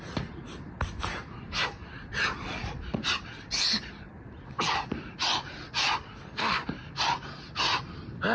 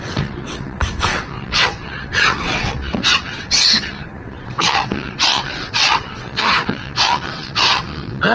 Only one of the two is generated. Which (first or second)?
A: second